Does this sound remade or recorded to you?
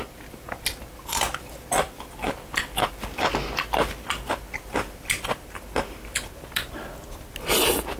recorded